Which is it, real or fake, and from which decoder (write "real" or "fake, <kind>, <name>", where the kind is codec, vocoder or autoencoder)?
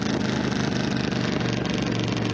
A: real